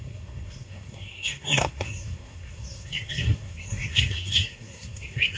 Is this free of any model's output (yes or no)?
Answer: no